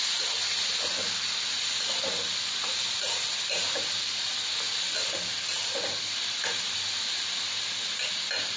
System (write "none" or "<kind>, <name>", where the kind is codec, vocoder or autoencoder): none